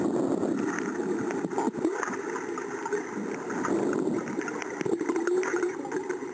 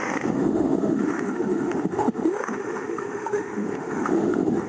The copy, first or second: second